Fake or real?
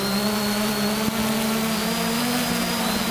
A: real